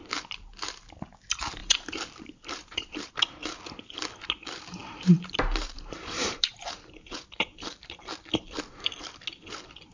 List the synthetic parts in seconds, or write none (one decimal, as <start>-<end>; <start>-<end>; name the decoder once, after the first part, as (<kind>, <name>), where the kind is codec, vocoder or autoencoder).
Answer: 1.6-3.1 (vocoder, BigVGAN v2); 4.8-8.1